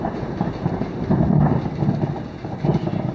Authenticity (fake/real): real